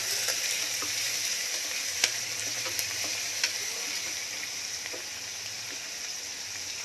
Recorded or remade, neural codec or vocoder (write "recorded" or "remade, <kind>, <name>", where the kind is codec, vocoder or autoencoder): remade, vocoder, BigVGAN v2